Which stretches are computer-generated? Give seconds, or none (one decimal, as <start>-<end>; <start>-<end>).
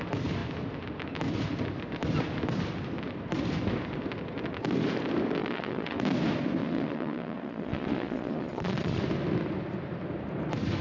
5.4-6.0; 6.6-9.0